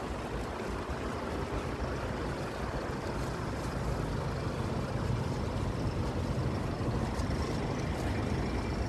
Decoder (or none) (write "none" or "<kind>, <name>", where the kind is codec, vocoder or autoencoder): none